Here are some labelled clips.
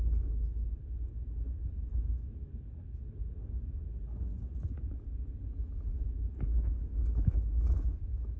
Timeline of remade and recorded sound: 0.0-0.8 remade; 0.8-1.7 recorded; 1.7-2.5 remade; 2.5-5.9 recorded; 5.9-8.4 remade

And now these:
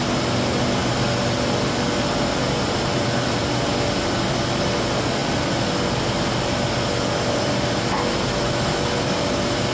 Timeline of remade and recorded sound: 0.0-9.7 recorded